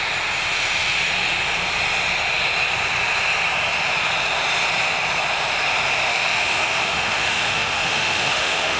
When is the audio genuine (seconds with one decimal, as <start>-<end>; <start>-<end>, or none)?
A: 0.0-6.1